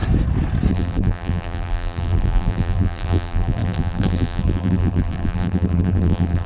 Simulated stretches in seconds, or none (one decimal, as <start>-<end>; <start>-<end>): 0.7-6.5